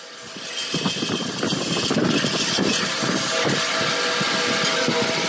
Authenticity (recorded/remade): recorded